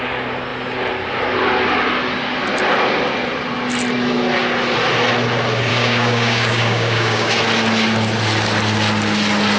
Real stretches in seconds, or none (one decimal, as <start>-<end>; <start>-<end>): 0.0-5.7; 7.3-9.6